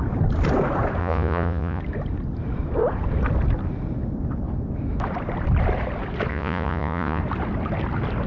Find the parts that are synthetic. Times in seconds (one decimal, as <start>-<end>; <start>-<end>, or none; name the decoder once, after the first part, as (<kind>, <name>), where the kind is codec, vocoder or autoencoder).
1.0-1.8 (vocoder, Vocos); 6.3-7.2